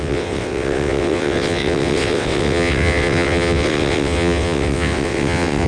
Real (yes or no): no